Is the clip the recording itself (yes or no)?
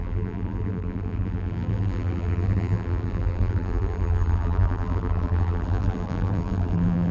no